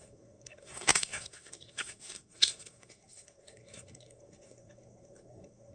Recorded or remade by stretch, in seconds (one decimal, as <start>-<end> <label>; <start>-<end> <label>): 0.0-5.7 remade